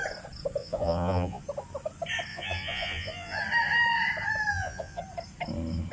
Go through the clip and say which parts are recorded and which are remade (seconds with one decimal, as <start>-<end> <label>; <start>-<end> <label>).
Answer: 0.0-0.6 recorded; 0.6-1.4 remade; 1.4-2.3 recorded; 2.3-3.4 remade; 3.4-4.5 recorded; 4.5-5.0 remade; 5.0-5.9 recorded